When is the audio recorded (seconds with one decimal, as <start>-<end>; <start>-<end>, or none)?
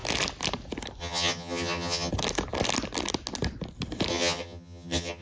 0.0-1.0; 2.1-4.1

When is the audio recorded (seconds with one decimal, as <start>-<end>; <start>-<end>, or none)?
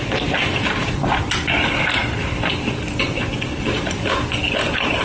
2.0-3.0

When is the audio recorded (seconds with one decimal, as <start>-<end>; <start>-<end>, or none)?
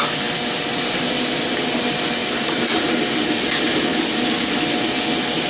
0.0-2.2; 2.9-3.9; 4.5-5.5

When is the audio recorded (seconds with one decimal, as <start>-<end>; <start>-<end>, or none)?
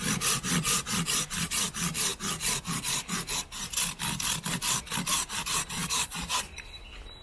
0.0-5.8; 6.4-7.2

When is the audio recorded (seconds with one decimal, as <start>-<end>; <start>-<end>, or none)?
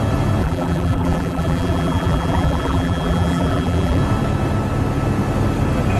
0.0-0.4; 4.0-6.0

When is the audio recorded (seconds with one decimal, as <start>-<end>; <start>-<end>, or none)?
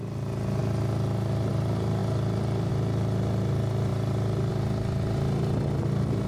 0.0-6.3